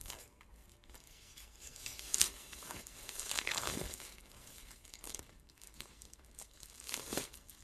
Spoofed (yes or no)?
yes